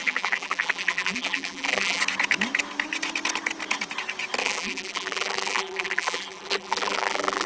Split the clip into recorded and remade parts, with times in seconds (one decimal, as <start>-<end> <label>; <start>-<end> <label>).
0.0-2.0 remade; 2.0-4.4 recorded; 4.4-7.5 remade